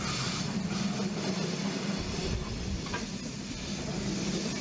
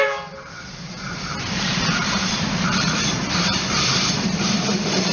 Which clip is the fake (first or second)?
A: second